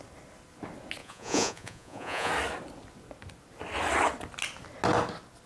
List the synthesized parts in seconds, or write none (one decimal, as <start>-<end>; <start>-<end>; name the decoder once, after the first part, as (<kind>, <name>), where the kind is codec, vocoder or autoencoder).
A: 1.0-2.3 (vocoder, Vocos)